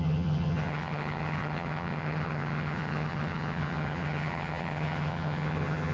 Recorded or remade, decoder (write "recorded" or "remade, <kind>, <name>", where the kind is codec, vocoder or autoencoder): remade, vocoder, HiFi-GAN